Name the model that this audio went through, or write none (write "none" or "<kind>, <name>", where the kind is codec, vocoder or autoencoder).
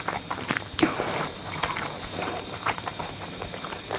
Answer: vocoder, BigVGAN v2